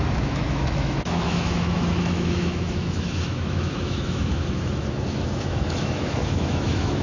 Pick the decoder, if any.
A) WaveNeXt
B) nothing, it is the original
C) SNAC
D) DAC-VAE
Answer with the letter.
D